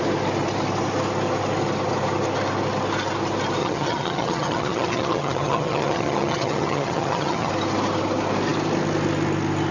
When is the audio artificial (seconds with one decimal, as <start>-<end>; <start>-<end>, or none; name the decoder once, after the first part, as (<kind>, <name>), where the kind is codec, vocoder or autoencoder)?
3.6-7.5 (vocoder, HiFi-GAN)

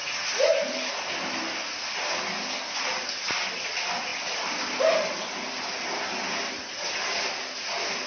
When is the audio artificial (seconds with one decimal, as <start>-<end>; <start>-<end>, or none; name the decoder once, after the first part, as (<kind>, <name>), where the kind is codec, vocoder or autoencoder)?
none

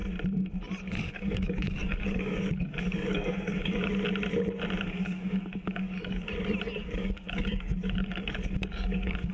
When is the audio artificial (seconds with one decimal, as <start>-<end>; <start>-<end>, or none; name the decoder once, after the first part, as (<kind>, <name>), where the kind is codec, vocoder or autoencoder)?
1.1-3.9 (codec, DAC); 4.8-6.3; 6.8-9.3

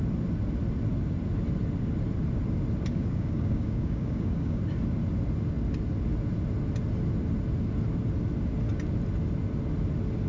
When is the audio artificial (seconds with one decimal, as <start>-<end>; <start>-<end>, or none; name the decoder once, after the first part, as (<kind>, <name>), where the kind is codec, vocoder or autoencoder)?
2.9-4.6 (codec, DAC)